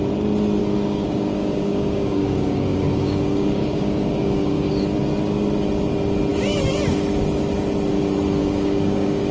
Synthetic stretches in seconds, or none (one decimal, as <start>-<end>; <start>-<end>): 0.6-4.7; 8.4-9.3